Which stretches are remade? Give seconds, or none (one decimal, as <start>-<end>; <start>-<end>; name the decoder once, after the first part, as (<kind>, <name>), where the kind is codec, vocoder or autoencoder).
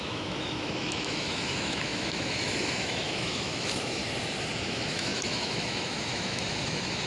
0.0-4.0 (autoencoder, DAC-VAE); 4.6-7.1